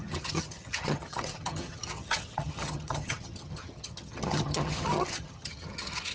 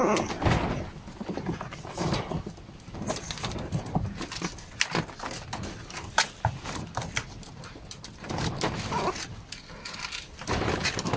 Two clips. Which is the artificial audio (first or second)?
first